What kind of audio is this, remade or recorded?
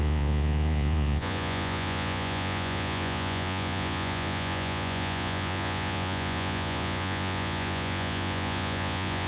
remade